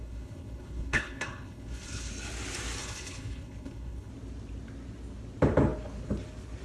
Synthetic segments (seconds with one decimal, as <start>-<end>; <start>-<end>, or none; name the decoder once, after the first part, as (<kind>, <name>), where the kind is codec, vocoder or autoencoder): 0.0-2.1 (codec, HILCodec); 2.8-4.1